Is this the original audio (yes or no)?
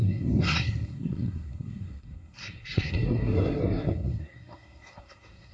no